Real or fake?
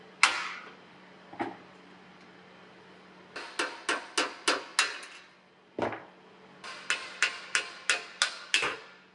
real